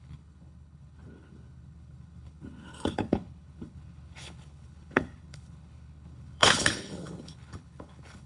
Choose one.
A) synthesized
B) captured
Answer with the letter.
A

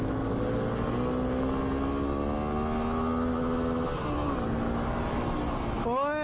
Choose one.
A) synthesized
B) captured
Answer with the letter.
B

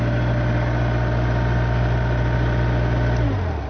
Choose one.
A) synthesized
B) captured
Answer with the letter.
B